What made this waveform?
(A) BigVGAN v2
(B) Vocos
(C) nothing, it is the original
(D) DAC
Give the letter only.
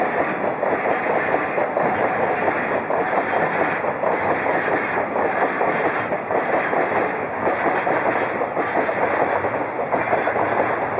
C